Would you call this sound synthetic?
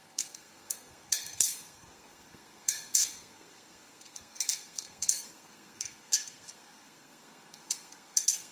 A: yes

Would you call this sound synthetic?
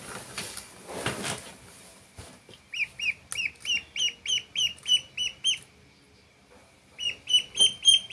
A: no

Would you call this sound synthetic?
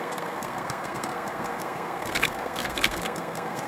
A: yes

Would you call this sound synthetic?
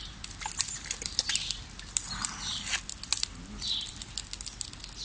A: no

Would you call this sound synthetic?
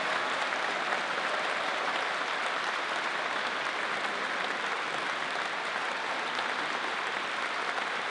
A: no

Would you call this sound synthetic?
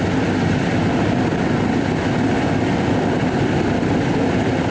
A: no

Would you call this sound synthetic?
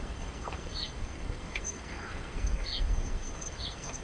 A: yes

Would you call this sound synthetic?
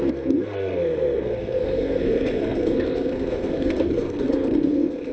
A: yes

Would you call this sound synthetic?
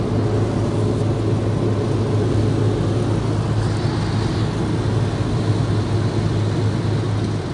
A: no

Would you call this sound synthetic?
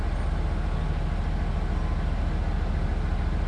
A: no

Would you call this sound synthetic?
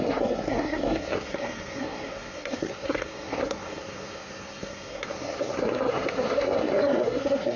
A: yes